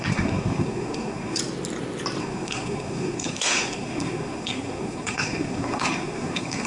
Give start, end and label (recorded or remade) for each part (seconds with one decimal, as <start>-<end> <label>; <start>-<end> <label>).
0.0-1.4 remade; 1.4-2.2 recorded; 2.2-6.7 remade